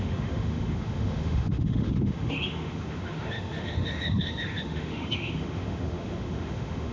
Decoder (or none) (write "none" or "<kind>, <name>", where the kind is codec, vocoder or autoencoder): autoencoder, DAC-VAE